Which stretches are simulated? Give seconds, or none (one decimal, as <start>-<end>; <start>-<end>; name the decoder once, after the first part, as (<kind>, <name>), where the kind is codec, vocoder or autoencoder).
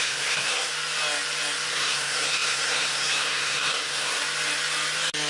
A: 0.0-0.7 (codec, SNAC); 1.7-4.2